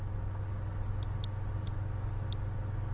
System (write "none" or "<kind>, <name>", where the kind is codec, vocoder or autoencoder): none